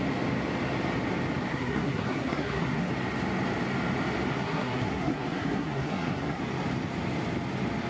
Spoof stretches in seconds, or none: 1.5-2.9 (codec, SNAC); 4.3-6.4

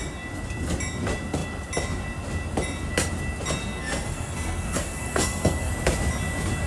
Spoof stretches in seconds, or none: 3.6-5.7 (codec, SNAC)